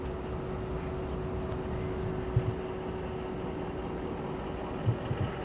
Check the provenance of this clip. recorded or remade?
recorded